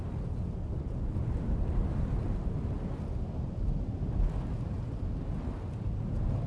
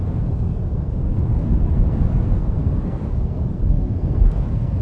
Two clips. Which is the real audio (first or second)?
first